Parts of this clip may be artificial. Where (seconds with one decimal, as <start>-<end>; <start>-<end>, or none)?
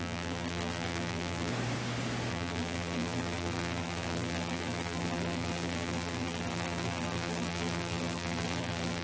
0.0-1.5; 2.3-9.0